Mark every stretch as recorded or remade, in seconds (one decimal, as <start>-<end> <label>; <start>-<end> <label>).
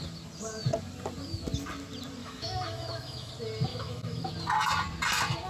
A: 0.0-2.2 recorded; 2.2-3.3 remade; 3.3-3.7 recorded; 3.7-4.3 remade; 4.3-5.5 recorded